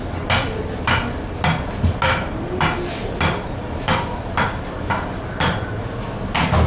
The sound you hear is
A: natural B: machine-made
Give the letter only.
A